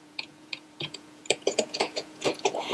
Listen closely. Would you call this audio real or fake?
fake